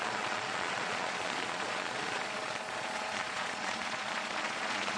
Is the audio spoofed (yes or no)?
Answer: yes